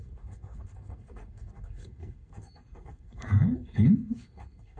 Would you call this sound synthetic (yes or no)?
yes